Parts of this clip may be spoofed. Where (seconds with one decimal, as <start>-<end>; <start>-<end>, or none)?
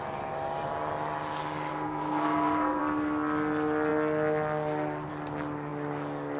1.7-2.8